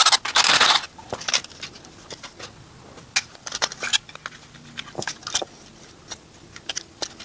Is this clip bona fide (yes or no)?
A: yes